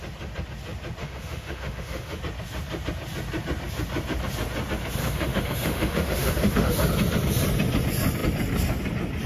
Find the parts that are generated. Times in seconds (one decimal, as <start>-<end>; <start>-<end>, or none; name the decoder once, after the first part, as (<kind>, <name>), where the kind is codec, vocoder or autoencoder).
1.0-2.2 (autoencoder, DAC-VAE); 5.0-6.7